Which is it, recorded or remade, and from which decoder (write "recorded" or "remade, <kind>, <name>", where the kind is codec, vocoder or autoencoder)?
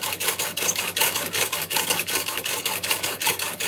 remade, codec, DAC